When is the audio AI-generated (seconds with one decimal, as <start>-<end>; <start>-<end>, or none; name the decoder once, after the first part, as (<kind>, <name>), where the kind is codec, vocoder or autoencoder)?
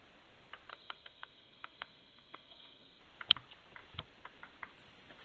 0.7-3.0 (codec, SNAC)